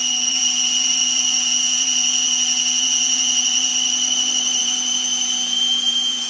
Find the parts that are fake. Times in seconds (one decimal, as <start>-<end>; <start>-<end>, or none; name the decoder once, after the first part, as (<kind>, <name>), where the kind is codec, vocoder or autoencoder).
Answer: 0.0-3.7 (vocoder, Vocos); 4.6-6.3